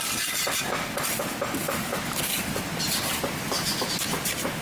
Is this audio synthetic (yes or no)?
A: yes